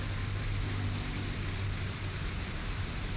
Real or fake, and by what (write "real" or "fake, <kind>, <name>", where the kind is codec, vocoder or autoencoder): real